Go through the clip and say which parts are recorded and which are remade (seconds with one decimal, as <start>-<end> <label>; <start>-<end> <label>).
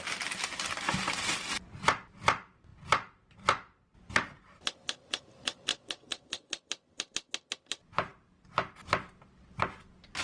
0.0-5.7 recorded; 5.7-6.6 remade; 6.6-10.2 recorded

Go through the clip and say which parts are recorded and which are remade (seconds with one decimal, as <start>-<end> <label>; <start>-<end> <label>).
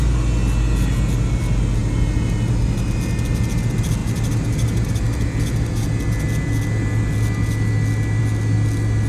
0.0-9.1 recorded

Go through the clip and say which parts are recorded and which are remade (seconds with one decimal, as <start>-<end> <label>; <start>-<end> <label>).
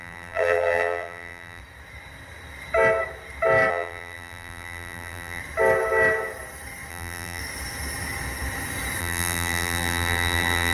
0.0-1.6 remade; 1.6-3.7 recorded; 3.7-5.4 remade; 5.4-6.9 recorded; 6.9-7.4 remade; 7.4-9.0 recorded; 9.0-10.7 remade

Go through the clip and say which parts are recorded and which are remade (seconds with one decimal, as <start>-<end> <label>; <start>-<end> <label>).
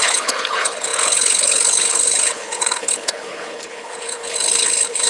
0.0-5.1 remade